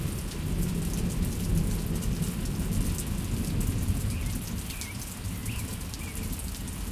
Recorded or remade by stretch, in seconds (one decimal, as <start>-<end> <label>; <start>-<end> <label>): 0.0-5.4 recorded; 5.4-5.9 remade; 5.9-6.9 recorded